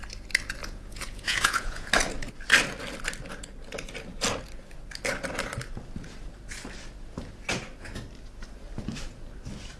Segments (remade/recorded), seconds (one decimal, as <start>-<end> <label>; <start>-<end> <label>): 0.0-0.6 recorded; 0.6-1.9 remade; 1.9-9.8 recorded

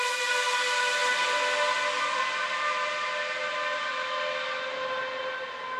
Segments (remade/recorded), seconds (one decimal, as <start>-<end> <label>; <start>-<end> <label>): 0.0-5.8 recorded

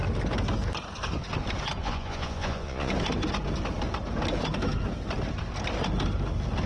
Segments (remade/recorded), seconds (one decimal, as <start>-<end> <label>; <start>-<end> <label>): 0.0-1.8 recorded; 1.8-2.9 remade; 2.9-6.7 recorded

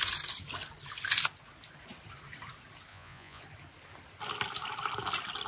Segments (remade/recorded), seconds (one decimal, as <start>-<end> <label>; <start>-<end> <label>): 0.0-2.9 recorded; 2.9-3.4 remade; 3.4-5.5 recorded